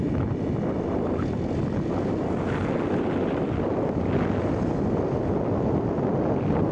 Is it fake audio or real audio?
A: real